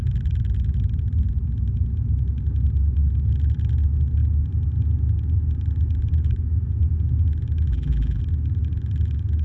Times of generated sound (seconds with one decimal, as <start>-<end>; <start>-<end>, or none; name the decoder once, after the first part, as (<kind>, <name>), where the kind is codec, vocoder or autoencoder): 7.7-8.2 (vocoder, BigVGAN v2)